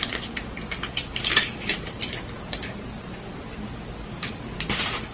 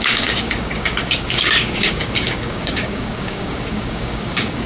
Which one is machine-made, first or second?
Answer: second